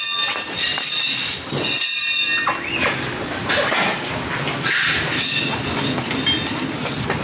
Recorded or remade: recorded